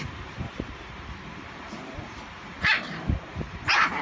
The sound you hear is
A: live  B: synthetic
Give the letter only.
B